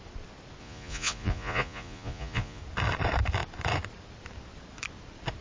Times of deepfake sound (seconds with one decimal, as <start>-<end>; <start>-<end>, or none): 0.6-2.6